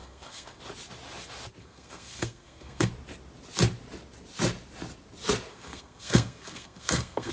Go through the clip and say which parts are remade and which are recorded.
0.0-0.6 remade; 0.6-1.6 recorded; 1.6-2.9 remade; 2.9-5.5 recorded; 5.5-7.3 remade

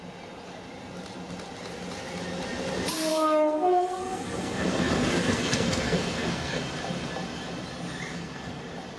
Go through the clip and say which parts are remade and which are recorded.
0.0-3.1 recorded; 3.1-6.6 remade; 6.6-8.1 recorded; 8.1-8.6 remade; 8.6-9.0 recorded

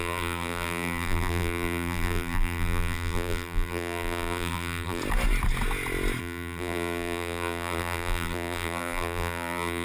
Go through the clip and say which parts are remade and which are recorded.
0.0-5.0 remade; 5.0-6.2 recorded; 6.2-9.8 remade

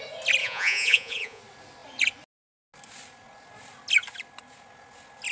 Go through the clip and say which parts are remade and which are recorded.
0.0-0.4 recorded; 0.4-1.4 remade; 1.4-5.3 recorded

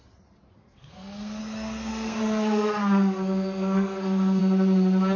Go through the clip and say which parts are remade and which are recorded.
0.0-0.6 recorded; 0.6-1.4 remade; 1.4-1.9 recorded; 1.9-4.4 remade; 4.4-5.2 recorded

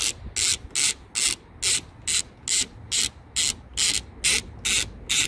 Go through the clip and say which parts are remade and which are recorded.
0.0-5.3 recorded

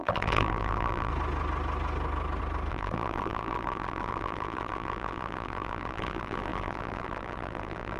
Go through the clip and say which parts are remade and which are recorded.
0.0-1.1 remade; 1.1-2.7 recorded; 2.7-8.0 remade

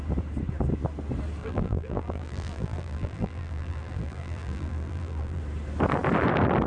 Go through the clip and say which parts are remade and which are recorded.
0.0-1.4 recorded; 1.4-5.4 remade; 5.4-6.7 recorded